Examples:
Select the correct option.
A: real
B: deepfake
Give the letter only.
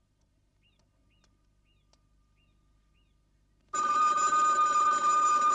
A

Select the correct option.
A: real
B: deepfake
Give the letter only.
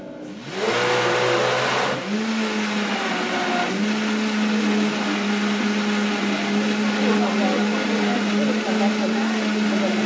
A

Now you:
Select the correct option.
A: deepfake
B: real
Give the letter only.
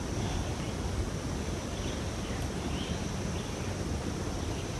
B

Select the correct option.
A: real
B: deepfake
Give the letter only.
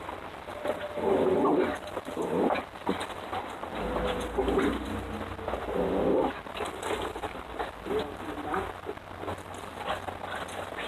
A